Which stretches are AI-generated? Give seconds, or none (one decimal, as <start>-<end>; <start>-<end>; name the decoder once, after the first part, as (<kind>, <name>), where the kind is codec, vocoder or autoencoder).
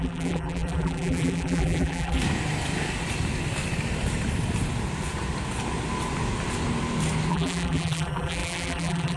0.0-2.2 (vocoder, BigVGAN v2); 7.3-9.2